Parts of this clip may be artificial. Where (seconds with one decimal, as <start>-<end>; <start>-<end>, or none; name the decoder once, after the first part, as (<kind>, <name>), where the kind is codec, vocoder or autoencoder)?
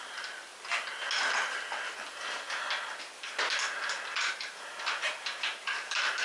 0.0-0.5 (vocoder, BigVGAN v2); 4.2-6.2